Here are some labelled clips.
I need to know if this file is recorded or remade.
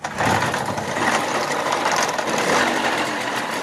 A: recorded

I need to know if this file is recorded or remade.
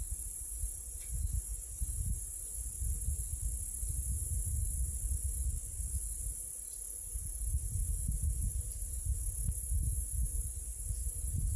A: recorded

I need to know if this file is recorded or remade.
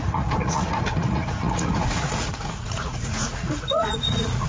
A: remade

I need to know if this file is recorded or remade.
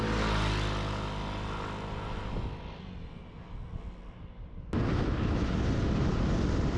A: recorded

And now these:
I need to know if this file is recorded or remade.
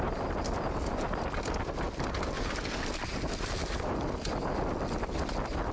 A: recorded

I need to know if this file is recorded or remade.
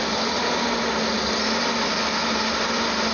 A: recorded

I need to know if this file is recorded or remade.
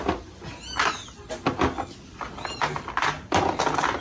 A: recorded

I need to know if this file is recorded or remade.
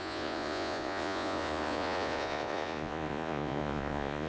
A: remade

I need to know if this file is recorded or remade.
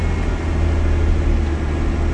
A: recorded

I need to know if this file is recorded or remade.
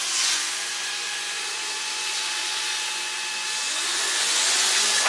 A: remade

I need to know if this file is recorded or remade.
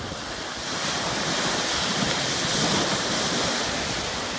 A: recorded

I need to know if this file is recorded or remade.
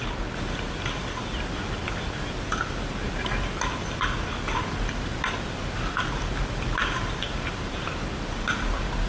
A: recorded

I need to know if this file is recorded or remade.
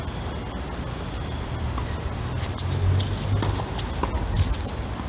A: recorded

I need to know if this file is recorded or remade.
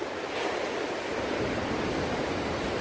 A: recorded